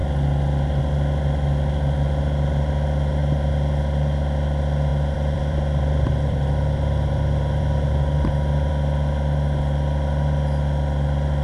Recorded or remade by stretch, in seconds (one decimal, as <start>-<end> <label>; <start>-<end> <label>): 0.0-4.9 recorded; 4.9-8.7 remade; 8.7-11.4 recorded